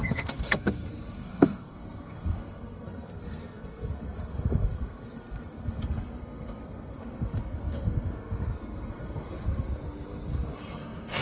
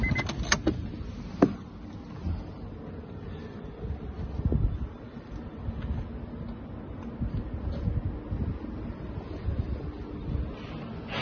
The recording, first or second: second